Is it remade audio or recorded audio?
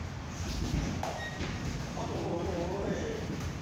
recorded